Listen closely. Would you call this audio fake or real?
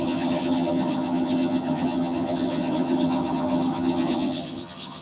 fake